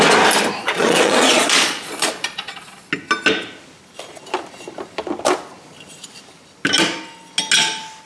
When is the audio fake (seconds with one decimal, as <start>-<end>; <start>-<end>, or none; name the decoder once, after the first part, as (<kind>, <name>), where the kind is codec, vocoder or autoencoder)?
0.6-2.9 (vocoder, Vocos)